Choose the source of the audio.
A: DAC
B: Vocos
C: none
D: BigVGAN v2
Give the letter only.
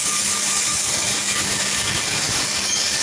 A